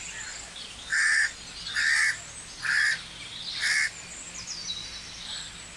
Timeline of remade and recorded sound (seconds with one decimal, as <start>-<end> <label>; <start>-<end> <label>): 0.0-5.8 recorded